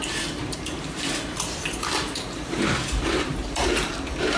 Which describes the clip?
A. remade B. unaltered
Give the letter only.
A